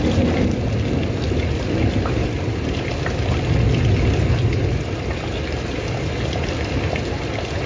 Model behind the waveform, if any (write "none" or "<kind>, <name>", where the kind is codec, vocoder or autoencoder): none